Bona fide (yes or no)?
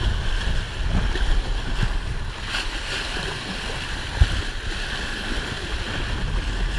yes